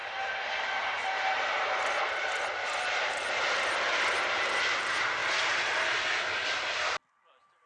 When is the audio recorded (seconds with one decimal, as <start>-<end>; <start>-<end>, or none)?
0.0-7.7